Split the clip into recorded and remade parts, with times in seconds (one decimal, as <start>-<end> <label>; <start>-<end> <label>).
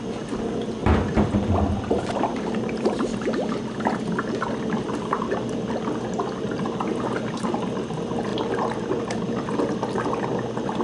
0.0-0.8 recorded; 0.8-1.3 remade; 1.3-2.3 recorded; 2.3-3.3 remade; 3.3-10.8 recorded